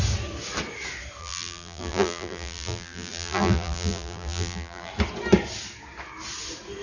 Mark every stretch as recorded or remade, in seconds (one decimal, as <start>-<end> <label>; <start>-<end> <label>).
0.0-1.2 recorded; 1.2-4.9 remade; 4.9-6.8 recorded